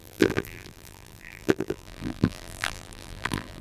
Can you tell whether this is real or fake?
fake